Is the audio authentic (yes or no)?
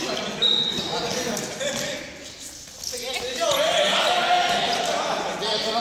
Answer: yes